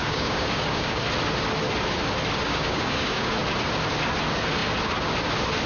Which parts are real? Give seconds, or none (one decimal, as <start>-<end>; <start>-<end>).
1.0-2.4; 3.3-5.7